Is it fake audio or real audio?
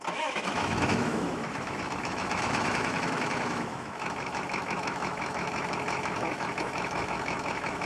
fake